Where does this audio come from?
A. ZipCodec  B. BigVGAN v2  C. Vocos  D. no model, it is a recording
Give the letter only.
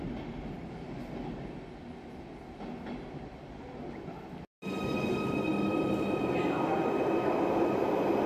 D